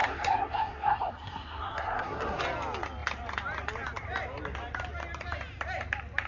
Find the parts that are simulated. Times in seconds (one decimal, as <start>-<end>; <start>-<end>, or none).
0.0-2.4